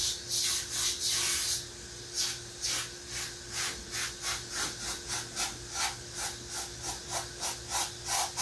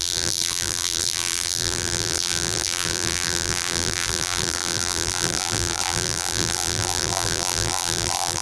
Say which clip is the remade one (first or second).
second